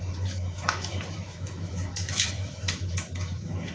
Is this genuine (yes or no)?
no